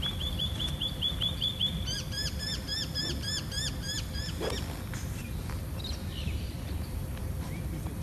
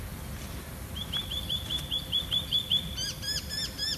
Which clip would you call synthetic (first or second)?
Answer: first